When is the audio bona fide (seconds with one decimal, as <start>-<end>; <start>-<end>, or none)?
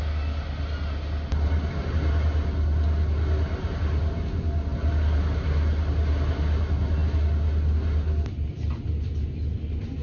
0.0-10.0